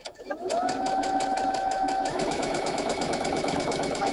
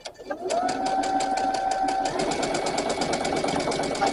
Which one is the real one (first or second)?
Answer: second